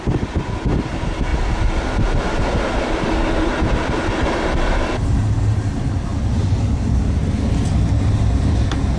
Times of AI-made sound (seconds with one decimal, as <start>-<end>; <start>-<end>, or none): none